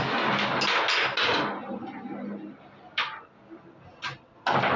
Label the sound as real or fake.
real